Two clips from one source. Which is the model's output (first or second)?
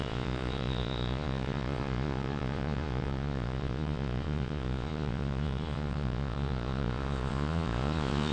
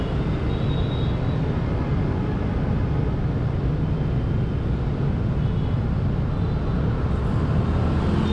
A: first